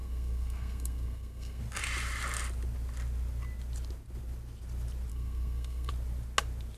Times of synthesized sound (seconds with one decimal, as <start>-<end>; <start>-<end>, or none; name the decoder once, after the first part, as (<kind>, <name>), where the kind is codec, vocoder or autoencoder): 0.0-1.6 (codec, SNAC); 5.1-5.9